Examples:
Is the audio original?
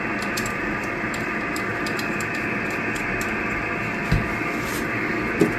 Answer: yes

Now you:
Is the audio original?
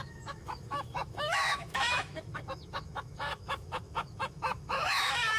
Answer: no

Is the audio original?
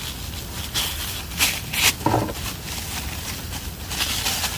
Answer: yes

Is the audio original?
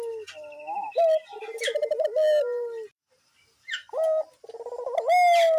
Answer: yes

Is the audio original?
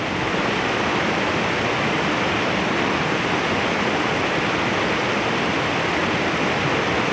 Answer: yes